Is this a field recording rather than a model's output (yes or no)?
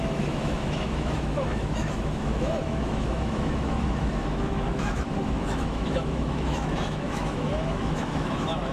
no